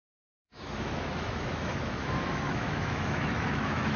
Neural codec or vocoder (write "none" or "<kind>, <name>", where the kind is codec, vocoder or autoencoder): autoencoder, DAC-VAE